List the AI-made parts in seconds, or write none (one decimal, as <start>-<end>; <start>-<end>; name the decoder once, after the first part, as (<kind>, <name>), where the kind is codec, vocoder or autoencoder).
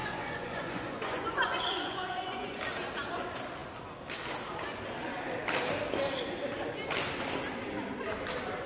0.0-2.6 (vocoder, Vocos)